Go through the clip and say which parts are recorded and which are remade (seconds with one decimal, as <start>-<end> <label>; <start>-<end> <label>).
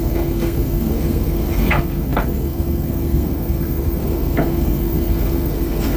0.0-6.0 remade